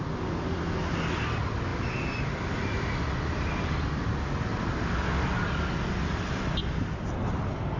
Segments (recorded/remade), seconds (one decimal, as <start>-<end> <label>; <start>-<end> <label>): 0.0-7.8 recorded

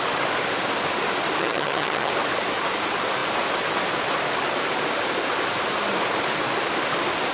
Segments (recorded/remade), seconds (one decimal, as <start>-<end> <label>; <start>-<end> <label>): 0.0-1.4 recorded; 1.4-2.1 remade; 2.1-7.3 recorded

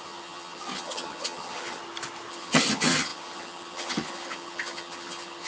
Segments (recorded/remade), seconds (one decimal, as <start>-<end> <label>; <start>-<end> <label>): 0.0-1.8 remade; 1.8-2.3 recorded; 2.3-5.5 remade

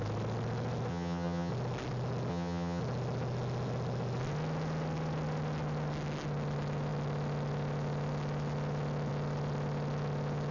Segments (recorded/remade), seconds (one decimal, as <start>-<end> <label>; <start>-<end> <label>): 0.0-0.9 recorded; 0.9-1.5 remade; 1.5-2.3 recorded; 2.3-2.8 remade; 2.8-10.5 recorded